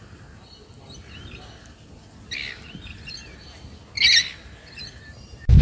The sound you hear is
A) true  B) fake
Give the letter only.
A